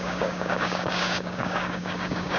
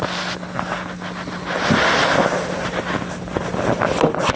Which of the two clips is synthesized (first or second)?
first